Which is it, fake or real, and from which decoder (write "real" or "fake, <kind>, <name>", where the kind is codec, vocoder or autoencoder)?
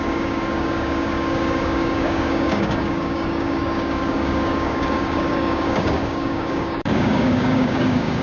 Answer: fake, codec, DAC